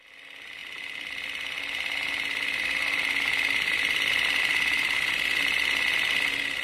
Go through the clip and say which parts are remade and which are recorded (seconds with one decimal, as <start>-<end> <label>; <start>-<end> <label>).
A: 0.0-0.6 recorded; 0.6-4.4 remade; 4.4-6.6 recorded